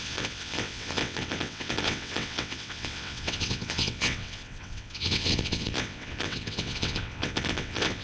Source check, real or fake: fake